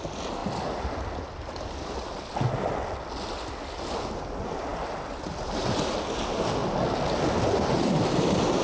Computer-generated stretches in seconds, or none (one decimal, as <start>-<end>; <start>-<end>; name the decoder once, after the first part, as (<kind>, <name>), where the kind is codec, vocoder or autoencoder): none